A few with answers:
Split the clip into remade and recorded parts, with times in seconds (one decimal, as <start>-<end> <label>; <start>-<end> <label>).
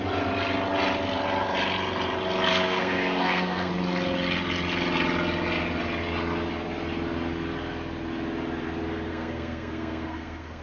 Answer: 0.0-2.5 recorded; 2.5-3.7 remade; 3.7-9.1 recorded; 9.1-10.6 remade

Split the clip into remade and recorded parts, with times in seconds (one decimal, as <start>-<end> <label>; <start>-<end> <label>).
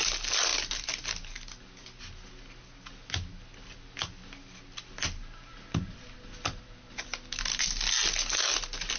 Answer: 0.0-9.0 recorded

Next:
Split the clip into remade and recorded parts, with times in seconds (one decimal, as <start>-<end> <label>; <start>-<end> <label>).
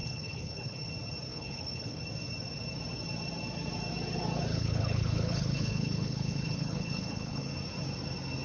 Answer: 0.0-0.9 remade; 0.9-1.3 recorded; 1.3-2.0 remade; 2.0-4.5 recorded; 4.5-7.5 remade; 7.5-8.4 recorded